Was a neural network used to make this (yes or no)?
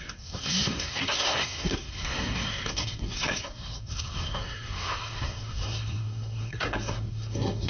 yes